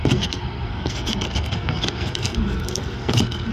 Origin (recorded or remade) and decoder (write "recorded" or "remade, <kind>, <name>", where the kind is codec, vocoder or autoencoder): remade, codec, SNAC